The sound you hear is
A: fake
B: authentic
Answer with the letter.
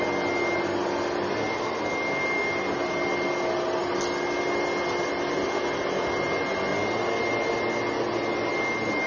B